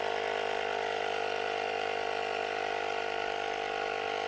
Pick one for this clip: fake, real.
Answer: real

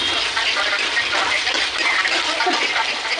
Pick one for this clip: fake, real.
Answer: real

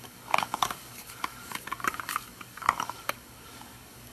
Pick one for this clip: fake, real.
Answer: fake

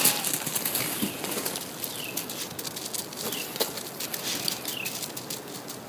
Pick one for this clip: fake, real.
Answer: real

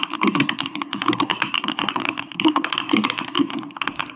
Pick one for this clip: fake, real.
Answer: fake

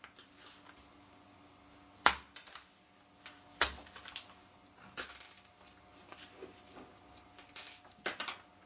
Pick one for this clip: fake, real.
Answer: real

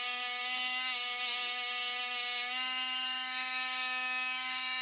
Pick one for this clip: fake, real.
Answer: fake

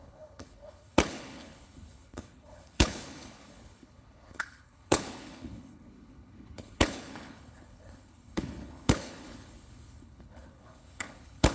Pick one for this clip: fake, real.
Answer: fake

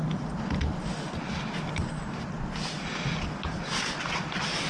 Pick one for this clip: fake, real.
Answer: real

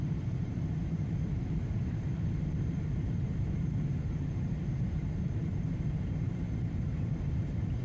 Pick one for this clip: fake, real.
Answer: fake